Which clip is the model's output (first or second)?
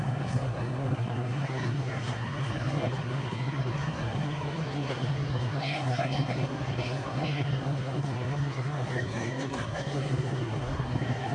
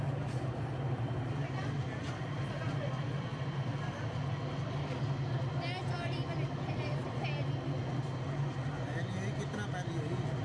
first